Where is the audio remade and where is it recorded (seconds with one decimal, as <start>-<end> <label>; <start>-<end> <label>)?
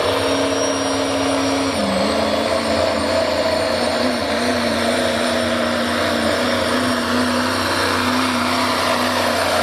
0.0-9.6 recorded